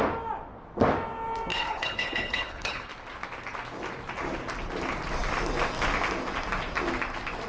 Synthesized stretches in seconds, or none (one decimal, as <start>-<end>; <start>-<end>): 1.5-2.9